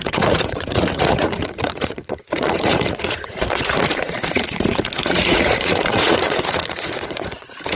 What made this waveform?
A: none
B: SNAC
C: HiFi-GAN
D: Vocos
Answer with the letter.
D